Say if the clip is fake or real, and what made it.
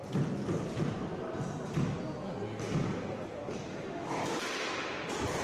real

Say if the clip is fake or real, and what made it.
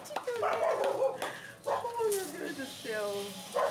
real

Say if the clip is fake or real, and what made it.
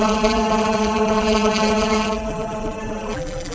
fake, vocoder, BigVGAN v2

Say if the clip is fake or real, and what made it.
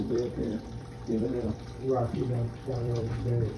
fake, vocoder, BigVGAN v2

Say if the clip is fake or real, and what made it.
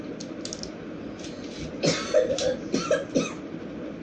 real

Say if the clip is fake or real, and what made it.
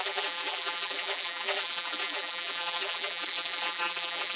fake, vocoder, BigVGAN v2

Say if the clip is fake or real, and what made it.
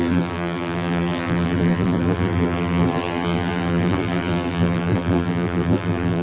fake, vocoder, BigVGAN v2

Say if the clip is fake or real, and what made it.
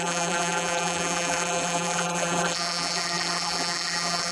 fake, vocoder, BigVGAN v2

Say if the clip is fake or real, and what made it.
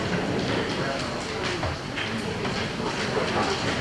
real